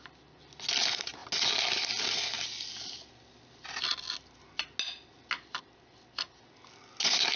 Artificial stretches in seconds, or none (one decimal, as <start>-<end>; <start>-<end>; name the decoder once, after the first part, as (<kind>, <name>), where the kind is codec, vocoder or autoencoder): none